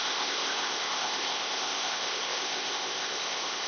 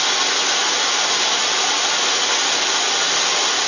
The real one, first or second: second